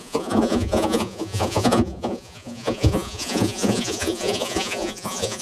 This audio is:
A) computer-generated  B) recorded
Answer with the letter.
A